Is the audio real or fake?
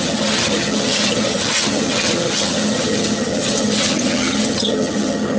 fake